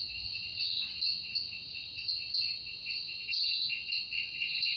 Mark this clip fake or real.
fake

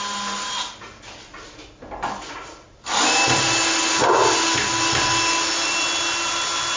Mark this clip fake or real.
real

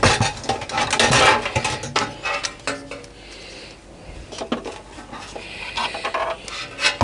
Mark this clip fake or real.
real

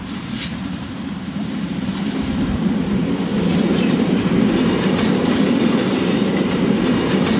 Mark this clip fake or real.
real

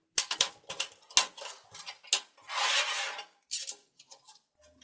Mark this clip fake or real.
real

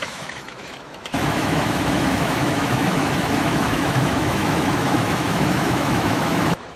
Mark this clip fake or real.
fake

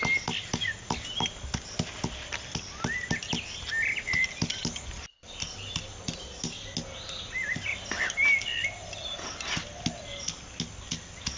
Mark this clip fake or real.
real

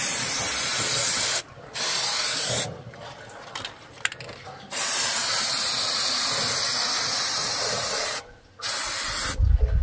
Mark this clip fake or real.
real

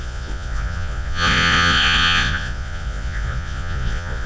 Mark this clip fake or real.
fake